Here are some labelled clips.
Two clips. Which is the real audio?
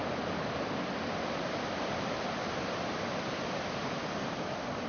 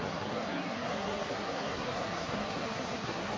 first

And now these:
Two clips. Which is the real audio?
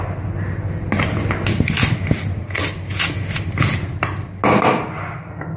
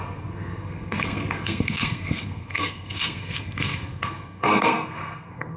first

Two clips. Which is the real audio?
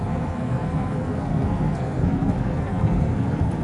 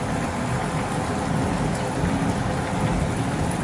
second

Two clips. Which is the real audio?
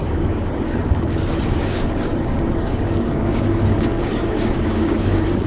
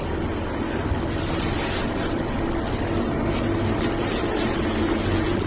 second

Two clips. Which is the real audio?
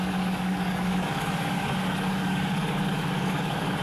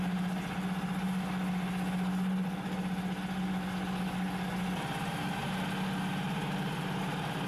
second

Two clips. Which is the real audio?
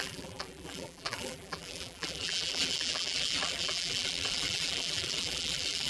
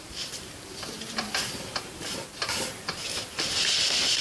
second